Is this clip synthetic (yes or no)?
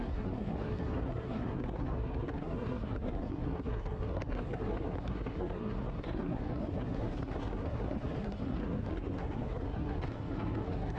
yes